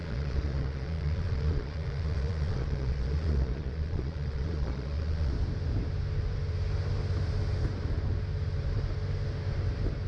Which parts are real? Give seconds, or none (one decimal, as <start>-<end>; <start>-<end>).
5.3-10.1